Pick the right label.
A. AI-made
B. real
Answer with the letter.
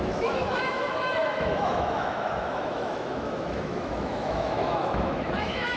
A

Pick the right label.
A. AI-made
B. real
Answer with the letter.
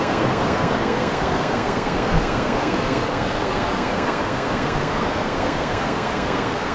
A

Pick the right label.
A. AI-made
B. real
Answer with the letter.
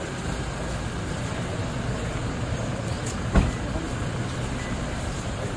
B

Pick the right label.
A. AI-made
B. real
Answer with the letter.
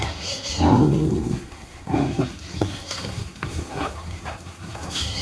A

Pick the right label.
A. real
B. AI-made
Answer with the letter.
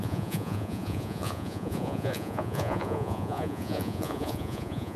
B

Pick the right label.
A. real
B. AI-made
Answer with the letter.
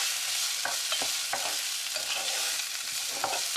A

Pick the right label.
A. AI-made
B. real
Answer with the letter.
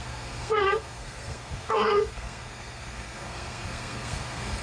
A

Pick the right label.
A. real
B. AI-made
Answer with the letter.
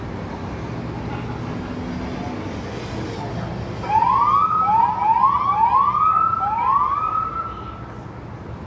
A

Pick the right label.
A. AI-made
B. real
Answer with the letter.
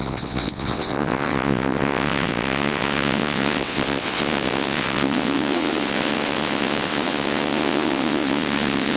A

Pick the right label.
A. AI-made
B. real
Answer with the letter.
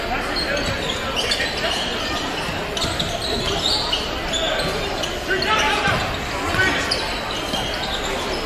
B